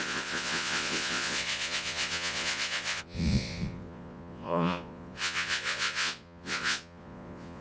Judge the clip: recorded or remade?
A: remade